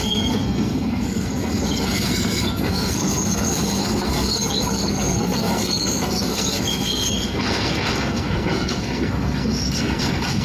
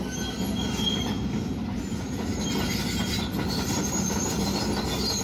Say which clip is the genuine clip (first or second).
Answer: second